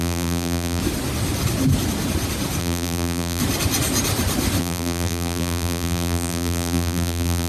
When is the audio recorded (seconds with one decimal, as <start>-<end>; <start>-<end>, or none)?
0.8-2.6; 3.4-4.6